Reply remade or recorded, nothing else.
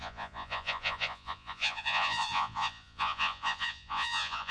remade